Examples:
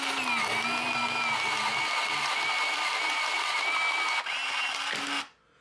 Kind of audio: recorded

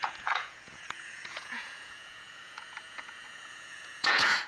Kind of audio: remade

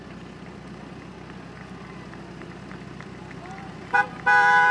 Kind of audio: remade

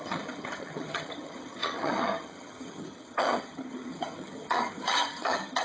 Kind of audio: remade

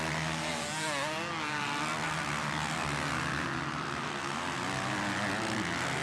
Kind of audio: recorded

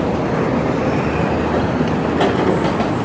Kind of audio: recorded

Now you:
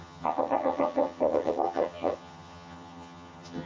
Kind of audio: remade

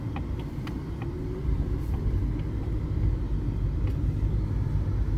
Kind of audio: recorded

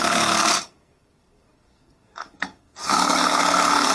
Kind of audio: remade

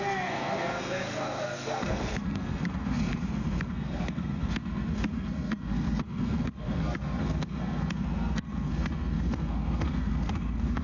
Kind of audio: remade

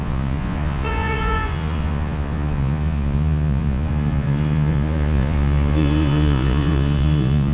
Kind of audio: remade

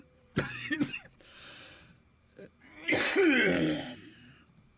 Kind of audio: remade